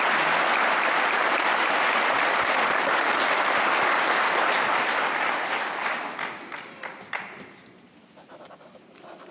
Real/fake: real